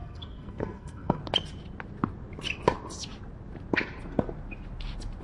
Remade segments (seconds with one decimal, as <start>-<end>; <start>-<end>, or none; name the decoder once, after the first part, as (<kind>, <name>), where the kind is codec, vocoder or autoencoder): 0.0-1.2 (codec, SNAC)